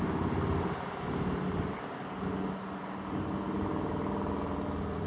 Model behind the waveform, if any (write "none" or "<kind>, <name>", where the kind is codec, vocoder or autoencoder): none